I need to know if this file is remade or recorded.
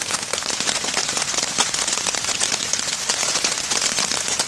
remade